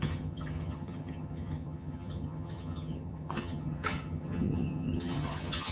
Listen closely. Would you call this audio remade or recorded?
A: remade